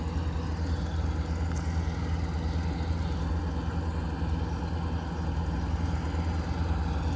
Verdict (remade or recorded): recorded